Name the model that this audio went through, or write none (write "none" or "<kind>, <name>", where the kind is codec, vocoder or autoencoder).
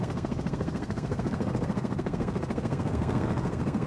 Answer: codec, SNAC